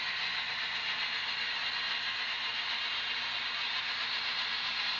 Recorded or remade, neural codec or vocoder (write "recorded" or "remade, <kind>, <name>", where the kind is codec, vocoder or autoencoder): recorded